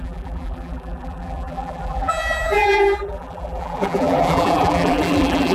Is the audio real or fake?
fake